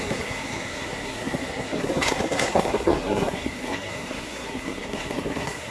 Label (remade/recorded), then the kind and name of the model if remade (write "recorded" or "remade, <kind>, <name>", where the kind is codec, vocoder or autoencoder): remade, codec, SNAC